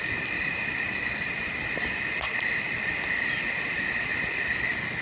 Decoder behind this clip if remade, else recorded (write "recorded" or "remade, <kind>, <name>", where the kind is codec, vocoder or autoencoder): recorded